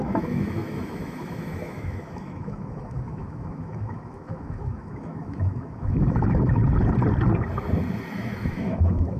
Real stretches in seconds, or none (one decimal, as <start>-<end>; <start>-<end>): 6.6-8.1